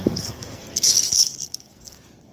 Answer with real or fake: fake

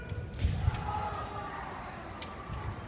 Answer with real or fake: real